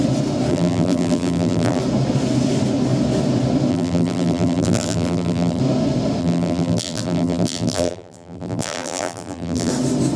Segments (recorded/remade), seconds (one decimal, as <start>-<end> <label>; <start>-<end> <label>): 0.0-0.5 recorded; 0.5-1.8 remade; 1.8-3.7 recorded; 3.7-5.6 remade; 5.6-6.2 recorded; 6.2-9.7 remade; 9.7-10.2 recorded